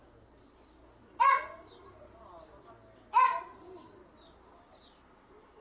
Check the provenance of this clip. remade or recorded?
recorded